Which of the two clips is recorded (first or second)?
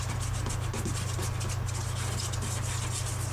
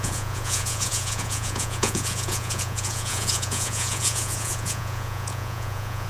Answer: first